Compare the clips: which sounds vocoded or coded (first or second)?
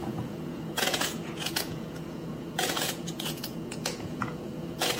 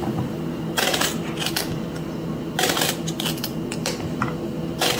first